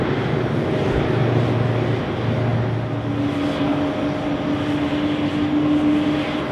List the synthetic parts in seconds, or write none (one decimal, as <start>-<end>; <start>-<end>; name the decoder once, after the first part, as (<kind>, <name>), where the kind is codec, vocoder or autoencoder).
none